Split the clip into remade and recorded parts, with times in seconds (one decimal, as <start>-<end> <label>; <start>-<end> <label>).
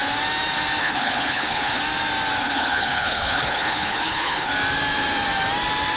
0.0-0.8 recorded; 0.8-1.8 remade; 1.8-2.4 recorded; 2.4-4.5 remade; 4.5-6.0 recorded